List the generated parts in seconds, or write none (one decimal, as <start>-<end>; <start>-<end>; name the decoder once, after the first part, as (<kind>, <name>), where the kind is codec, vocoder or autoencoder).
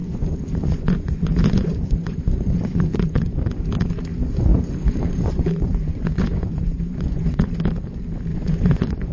0.0-3.4 (vocoder, Vocos); 4.5-7.5; 8.3-9.1